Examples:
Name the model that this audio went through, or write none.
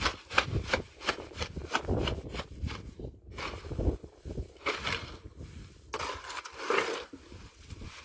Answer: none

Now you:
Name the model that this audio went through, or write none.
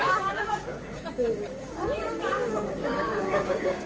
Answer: codec, DAC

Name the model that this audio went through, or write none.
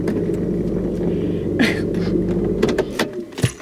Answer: none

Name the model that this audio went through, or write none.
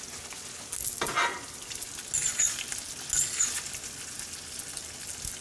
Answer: none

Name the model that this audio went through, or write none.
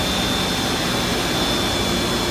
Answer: none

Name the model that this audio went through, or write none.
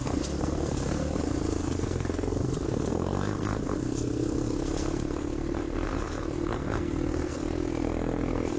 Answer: codec, SNAC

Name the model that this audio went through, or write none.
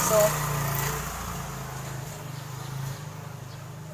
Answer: none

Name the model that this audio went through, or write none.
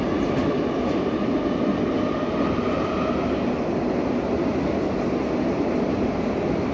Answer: none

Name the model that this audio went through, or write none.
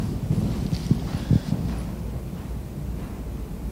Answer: none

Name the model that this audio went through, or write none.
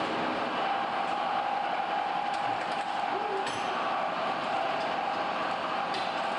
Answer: none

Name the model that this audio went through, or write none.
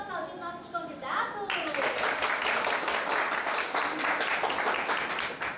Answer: none